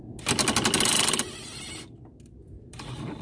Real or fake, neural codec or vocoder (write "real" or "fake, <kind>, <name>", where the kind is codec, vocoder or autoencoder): real